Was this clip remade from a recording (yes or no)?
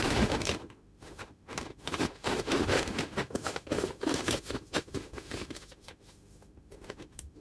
yes